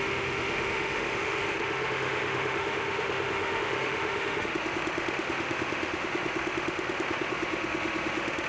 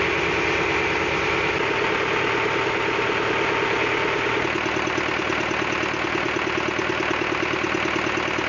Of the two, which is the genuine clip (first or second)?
second